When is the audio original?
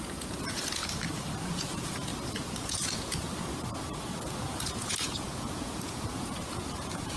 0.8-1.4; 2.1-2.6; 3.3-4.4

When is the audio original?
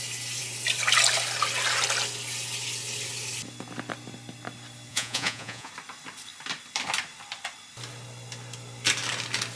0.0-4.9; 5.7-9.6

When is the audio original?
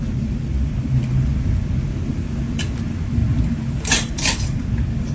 0.0-5.1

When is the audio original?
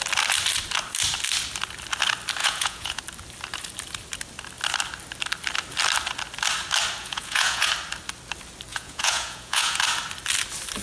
0.0-2.4; 3.0-7.0; 7.7-8.7; 9.8-10.8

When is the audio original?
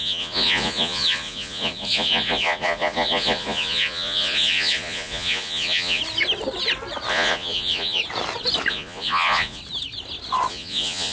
6.0-7.1; 8.0-8.7; 9.6-10.5